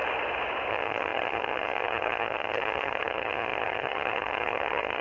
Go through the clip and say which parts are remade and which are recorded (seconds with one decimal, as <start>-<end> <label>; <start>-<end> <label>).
0.0-0.7 recorded; 0.7-5.0 remade